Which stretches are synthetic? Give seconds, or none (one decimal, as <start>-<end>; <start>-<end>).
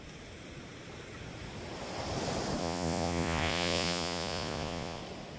2.6-5.0